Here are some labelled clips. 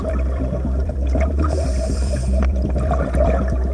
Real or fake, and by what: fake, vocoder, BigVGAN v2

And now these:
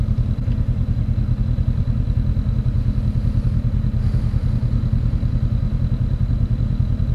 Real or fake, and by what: real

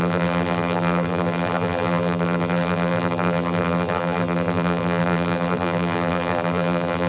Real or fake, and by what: fake, vocoder, BigVGAN v2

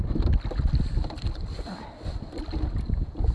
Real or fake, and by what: real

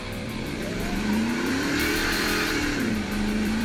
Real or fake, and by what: fake, vocoder, BigVGAN v2